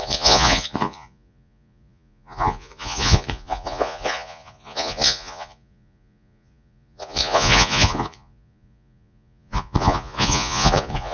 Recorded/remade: remade